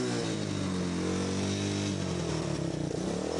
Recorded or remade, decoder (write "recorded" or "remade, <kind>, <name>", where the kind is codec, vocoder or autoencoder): recorded